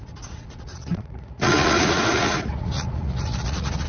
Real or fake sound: fake